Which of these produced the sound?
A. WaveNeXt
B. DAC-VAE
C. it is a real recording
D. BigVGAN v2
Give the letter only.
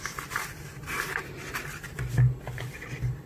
C